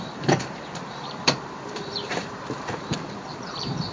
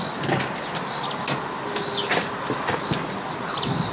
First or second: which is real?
second